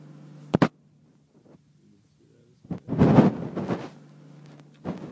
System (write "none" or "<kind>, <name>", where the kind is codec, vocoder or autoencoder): none